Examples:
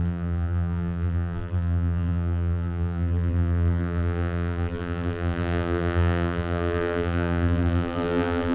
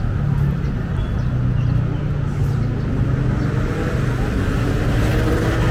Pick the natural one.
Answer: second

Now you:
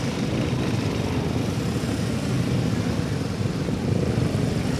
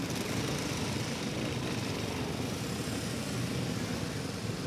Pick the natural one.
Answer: second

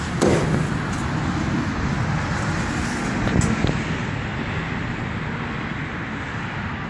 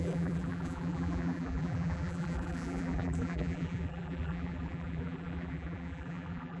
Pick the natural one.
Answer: first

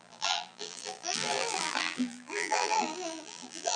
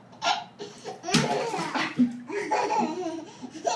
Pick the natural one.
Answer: second